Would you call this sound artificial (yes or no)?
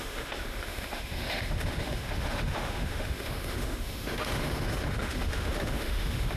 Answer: yes